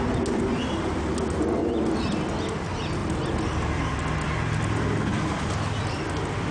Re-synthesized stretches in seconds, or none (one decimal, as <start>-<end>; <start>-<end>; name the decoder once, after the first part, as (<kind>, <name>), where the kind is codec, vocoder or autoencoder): 3.0-3.9 (vocoder, BigVGAN v2)